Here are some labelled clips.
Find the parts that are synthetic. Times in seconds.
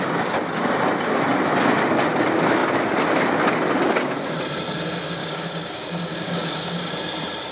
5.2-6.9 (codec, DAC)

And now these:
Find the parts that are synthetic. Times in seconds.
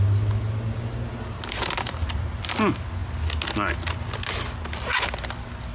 none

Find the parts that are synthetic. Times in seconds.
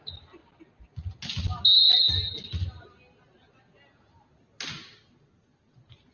none